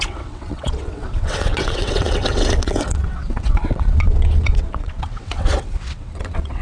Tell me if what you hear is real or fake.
fake